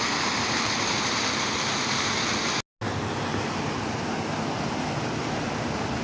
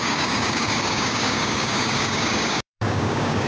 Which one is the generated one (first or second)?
second